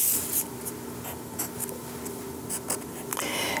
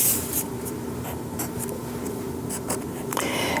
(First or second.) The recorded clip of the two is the first